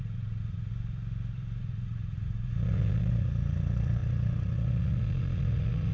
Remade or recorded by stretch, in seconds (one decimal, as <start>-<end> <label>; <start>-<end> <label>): 0.0-0.7 remade; 0.7-1.6 recorded; 1.6-5.9 remade